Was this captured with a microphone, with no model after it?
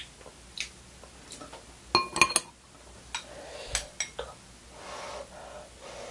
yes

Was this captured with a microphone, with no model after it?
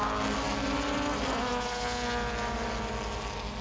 yes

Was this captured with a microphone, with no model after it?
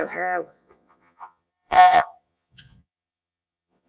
no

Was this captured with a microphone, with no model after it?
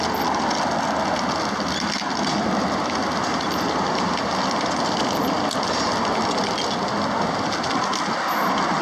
yes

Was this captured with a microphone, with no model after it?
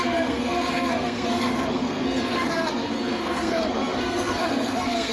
no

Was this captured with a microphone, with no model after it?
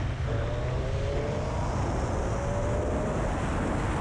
yes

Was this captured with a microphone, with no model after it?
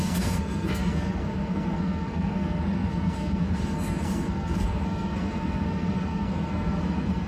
no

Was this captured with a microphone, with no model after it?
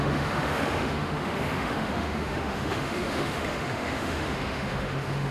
no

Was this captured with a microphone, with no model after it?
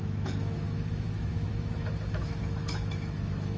no